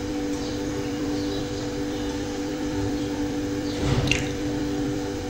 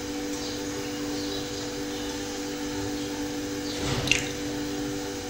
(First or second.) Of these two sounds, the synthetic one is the first